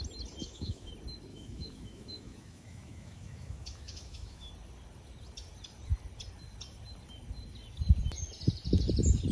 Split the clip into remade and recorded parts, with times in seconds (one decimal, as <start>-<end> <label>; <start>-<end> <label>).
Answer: 0.0-0.4 recorded; 0.4-0.9 remade; 0.9-1.3 recorded; 1.3-4.5 remade; 4.5-9.3 recorded